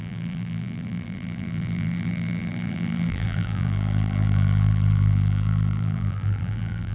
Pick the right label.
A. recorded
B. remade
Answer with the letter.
B